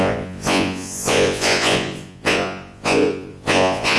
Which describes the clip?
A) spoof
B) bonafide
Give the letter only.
A